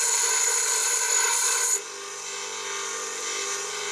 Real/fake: real